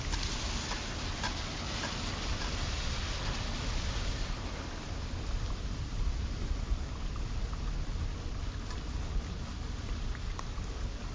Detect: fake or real real